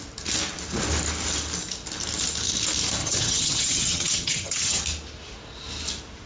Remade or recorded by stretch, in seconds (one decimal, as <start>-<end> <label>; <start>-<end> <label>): 0.0-3.0 recorded; 3.0-4.8 remade; 4.8-6.3 recorded